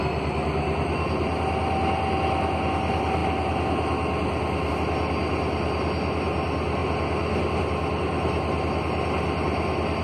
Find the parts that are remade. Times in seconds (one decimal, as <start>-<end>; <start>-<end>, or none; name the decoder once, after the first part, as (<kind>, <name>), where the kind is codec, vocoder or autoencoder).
none